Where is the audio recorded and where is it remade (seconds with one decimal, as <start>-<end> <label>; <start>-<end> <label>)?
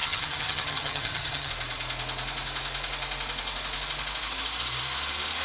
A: 0.0-1.5 remade; 1.5-5.4 recorded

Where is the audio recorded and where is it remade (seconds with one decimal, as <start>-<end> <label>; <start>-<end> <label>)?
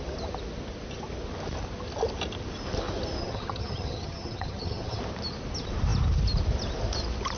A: 0.0-3.2 recorded; 3.2-5.0 remade; 5.0-7.4 recorded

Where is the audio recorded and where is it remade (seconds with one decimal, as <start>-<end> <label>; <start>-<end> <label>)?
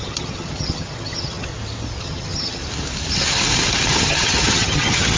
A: 0.0-1.5 remade; 1.5-2.0 recorded; 2.0-2.6 remade; 2.6-3.9 recorded; 3.9-5.2 remade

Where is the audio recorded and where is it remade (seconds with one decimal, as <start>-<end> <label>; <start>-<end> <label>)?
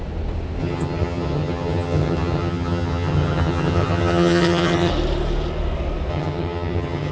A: 0.0-0.6 recorded; 0.6-4.9 remade; 4.9-6.1 recorded; 6.1-7.1 remade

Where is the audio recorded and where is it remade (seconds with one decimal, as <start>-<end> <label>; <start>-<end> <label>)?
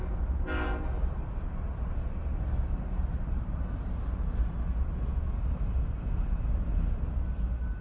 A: 0.0-7.8 recorded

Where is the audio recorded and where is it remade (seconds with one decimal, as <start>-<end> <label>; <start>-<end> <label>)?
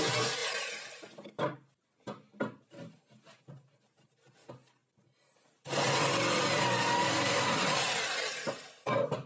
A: 0.0-9.3 recorded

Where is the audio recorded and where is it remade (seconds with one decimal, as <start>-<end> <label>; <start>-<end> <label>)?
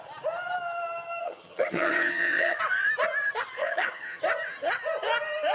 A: 0.0-1.2 recorded; 1.2-2.6 remade; 2.6-3.6 recorded; 3.6-4.2 remade; 4.2-5.5 recorded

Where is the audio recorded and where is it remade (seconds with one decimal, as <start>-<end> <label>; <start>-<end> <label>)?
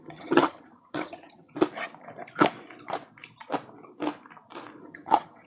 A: 0.0-1.5 remade; 1.5-4.8 recorded; 4.8-5.5 remade